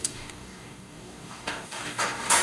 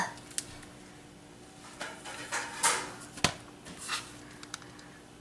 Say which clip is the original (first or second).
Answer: second